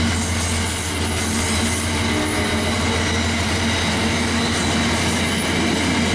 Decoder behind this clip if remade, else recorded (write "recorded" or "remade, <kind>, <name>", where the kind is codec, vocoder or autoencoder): recorded